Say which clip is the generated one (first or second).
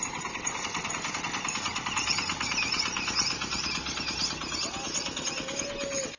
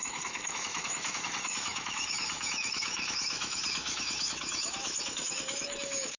second